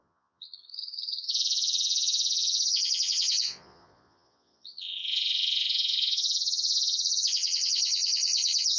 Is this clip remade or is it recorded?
remade